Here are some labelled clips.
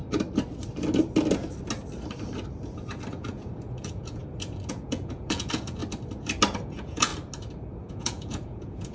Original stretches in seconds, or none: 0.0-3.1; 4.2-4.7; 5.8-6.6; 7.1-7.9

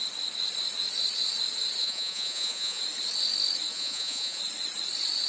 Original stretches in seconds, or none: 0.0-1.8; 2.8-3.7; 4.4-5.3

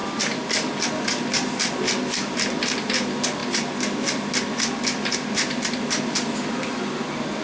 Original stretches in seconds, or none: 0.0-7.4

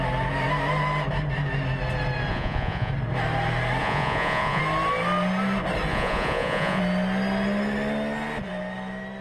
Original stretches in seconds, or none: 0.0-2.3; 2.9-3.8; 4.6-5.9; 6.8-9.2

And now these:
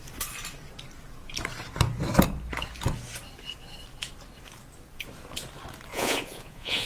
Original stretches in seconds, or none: 0.0-5.9

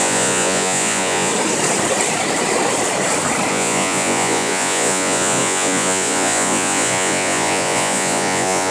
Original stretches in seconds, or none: 1.3-3.5

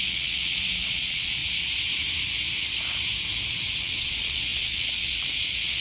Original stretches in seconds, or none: 1.4-3.8